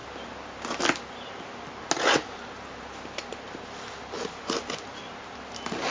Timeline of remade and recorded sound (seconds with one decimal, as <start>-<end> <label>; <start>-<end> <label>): 0.0-5.9 recorded